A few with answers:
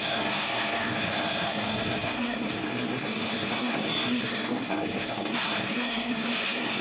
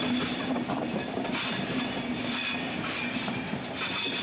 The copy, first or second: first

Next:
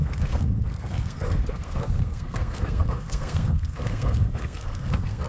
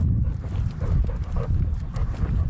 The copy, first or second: first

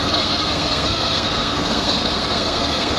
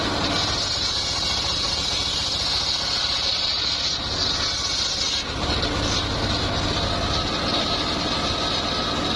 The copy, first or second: first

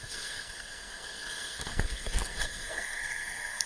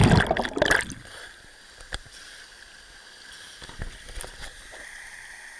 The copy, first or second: first